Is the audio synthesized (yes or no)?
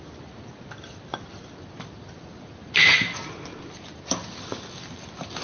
no